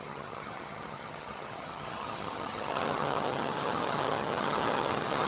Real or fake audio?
fake